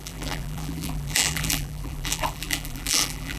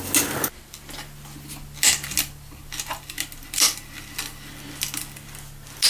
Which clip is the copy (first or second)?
first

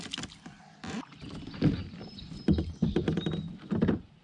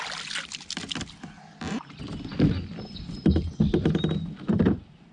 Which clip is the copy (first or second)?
first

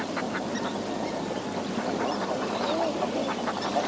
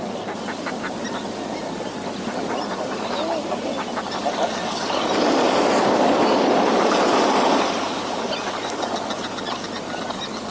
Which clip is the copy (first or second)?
first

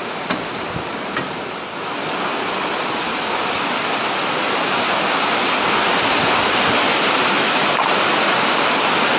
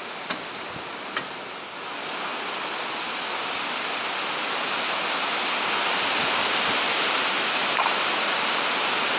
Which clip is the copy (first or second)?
first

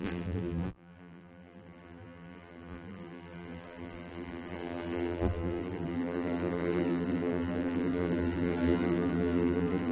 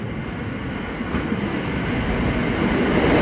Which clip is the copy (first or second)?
first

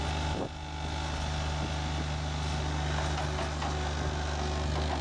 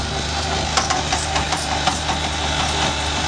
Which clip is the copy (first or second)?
second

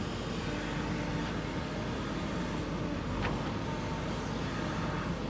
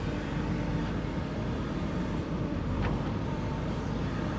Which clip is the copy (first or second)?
second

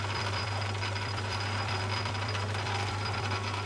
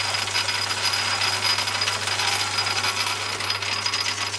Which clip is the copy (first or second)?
first